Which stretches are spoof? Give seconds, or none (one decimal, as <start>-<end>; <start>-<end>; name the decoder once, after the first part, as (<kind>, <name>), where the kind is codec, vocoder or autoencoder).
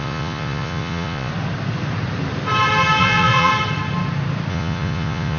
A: 0.0-1.3 (vocoder, Vocos); 3.0-3.5; 4.5-5.4